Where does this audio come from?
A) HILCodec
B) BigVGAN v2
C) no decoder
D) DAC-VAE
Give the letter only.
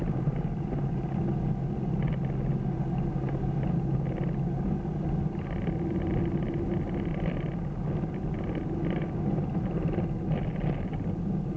C